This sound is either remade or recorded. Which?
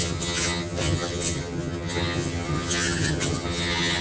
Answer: remade